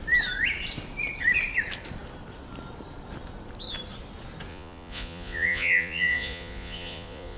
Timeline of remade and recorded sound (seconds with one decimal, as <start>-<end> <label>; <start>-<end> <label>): 0.0-4.5 recorded; 4.5-7.4 remade